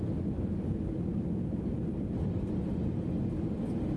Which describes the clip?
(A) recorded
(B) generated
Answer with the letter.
A